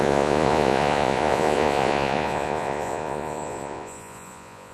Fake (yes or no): yes